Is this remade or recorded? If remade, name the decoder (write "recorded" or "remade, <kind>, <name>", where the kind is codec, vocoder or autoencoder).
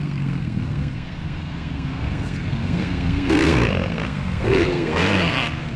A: remade, codec, SNAC